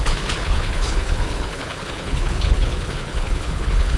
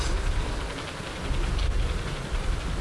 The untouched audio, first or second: second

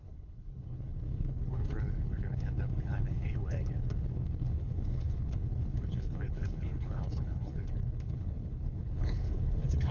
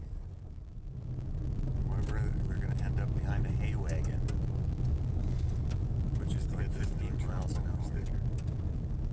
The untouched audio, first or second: second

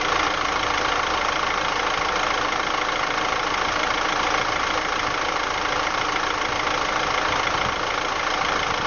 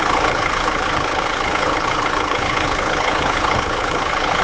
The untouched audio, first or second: first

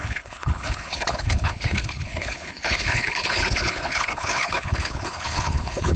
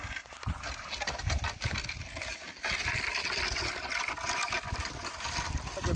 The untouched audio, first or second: second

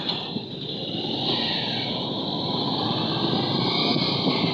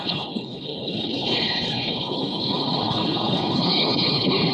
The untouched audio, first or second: first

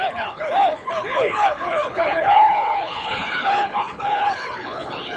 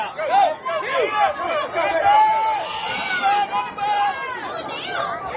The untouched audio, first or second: second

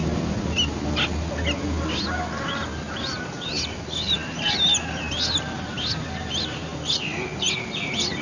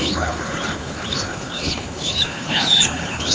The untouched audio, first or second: first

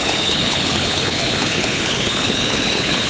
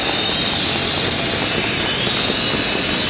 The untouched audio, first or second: second